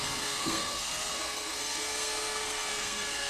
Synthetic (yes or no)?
yes